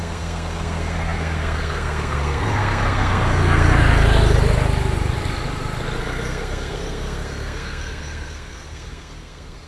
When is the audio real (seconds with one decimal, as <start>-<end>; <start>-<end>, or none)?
3.7-6.0

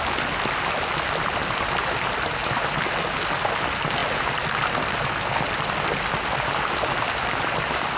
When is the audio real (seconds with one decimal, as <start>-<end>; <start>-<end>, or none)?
0.0-8.0

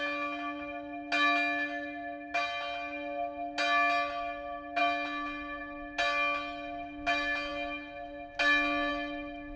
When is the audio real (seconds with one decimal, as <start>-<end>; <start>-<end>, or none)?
0.0-9.6

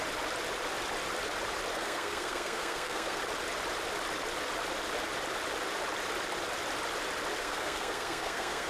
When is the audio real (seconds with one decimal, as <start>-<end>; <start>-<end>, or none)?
0.0-1.7; 3.2-7.4

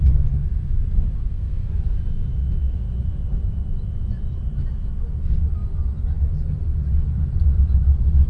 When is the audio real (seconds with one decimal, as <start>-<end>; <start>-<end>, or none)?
0.0-1.2; 1.7-8.3

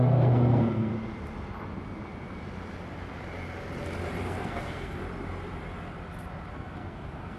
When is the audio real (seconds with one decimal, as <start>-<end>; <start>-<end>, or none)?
0.9-4.2; 5.0-6.5

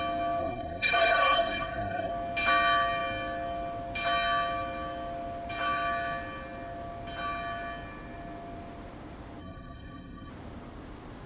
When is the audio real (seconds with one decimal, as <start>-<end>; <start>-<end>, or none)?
0.0-0.4; 2.1-9.4; 10.3-11.3